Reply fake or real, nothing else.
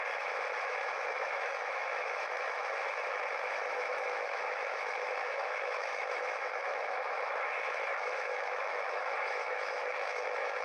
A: fake